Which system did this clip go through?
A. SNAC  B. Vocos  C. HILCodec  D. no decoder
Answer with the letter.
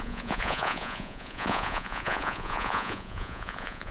B